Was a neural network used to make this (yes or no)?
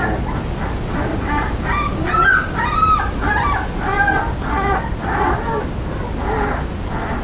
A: no